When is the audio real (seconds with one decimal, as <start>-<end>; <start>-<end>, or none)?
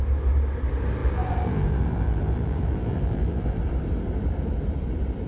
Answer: 0.0-1.0; 3.6-5.3